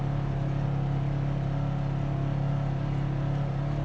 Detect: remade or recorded recorded